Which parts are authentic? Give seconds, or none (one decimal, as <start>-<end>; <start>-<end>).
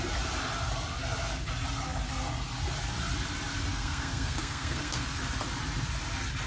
0.0-3.7; 5.2-6.5